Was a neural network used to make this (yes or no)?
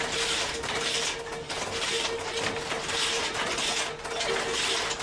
no